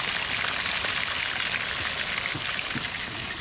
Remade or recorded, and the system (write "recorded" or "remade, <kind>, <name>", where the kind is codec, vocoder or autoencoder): recorded